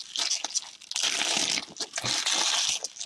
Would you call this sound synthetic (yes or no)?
no